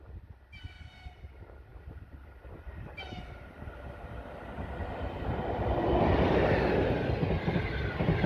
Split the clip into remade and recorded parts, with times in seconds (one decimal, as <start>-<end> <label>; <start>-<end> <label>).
0.0-8.3 recorded